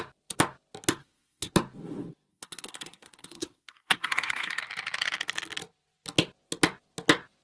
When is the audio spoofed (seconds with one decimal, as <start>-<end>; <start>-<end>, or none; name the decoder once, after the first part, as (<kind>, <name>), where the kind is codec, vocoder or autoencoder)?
1.0-1.5 (codec, SNAC); 2.3-4.6